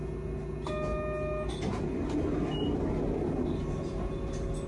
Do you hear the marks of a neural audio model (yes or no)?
no